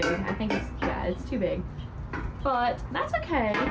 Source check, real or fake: real